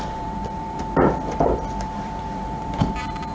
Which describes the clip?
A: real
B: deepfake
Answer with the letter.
B